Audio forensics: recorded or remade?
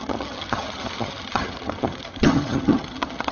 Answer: remade